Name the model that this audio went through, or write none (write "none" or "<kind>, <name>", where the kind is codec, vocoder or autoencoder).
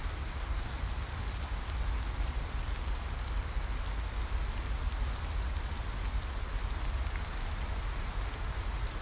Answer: none